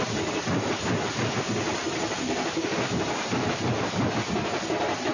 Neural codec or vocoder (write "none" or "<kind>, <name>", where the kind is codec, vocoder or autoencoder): none